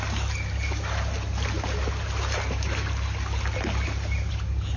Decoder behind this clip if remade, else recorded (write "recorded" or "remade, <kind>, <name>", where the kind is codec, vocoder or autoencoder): recorded